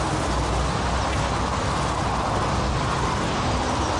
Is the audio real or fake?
real